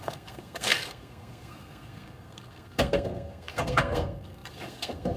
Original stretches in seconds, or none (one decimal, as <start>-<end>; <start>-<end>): none